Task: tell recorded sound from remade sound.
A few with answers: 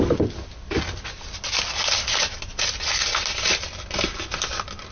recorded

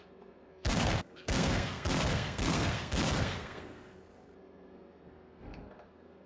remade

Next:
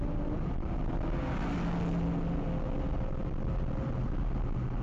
recorded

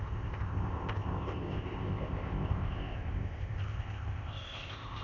remade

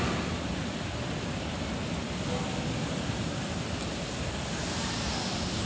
recorded